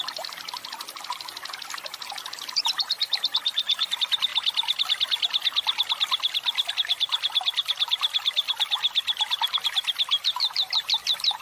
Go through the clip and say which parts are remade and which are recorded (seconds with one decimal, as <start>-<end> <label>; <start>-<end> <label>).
0.0-4.3 remade; 4.3-6.7 recorded; 6.7-11.4 remade